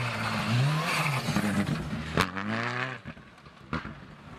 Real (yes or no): yes